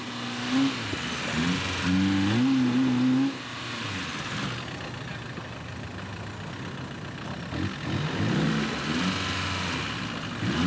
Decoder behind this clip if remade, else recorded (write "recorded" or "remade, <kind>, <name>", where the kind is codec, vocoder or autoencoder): recorded